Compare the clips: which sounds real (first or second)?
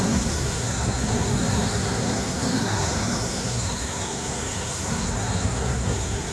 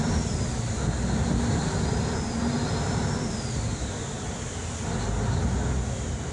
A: second